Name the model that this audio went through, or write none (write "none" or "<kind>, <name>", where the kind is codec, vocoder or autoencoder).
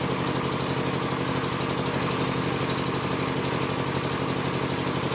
none